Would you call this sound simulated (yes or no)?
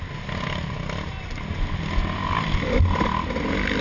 no